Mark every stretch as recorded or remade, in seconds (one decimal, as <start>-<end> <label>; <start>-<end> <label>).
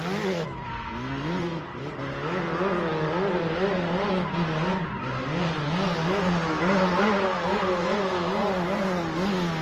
0.0-0.7 recorded; 0.7-1.6 remade; 1.6-9.6 recorded